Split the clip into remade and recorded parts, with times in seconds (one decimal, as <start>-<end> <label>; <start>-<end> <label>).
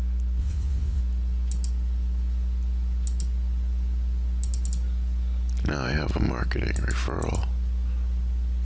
0.0-0.4 recorded; 0.4-1.0 remade; 1.0-8.6 recorded